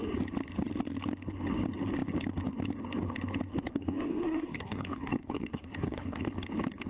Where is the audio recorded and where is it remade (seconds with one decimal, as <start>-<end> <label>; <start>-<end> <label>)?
0.0-3.7 recorded; 3.7-6.3 remade; 6.3-6.9 recorded